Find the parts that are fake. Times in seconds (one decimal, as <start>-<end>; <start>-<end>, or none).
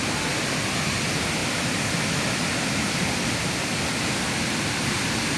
none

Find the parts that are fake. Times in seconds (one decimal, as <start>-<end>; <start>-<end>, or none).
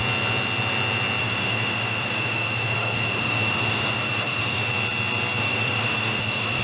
1.2-4.7; 5.4-6.6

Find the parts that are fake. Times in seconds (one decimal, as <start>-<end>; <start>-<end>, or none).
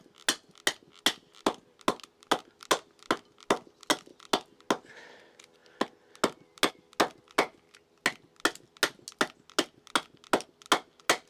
none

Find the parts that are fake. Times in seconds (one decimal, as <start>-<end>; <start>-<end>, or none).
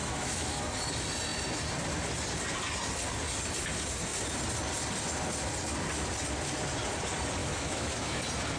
0.0-0.6; 7.4-8.2